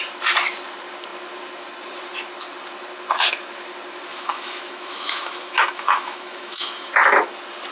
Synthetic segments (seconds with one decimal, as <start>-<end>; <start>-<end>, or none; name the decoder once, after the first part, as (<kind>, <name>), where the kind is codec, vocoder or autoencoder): 4.1-6.9 (autoencoder, DAC-VAE)